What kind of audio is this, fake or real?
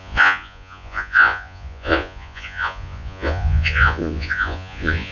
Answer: fake